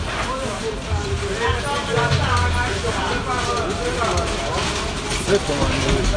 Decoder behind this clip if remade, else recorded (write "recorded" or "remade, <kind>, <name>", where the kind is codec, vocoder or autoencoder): recorded